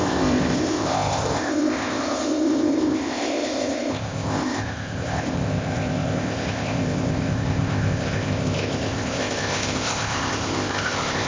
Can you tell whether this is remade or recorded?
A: remade